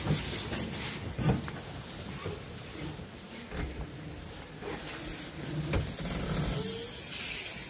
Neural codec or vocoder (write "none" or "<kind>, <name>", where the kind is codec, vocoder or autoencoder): none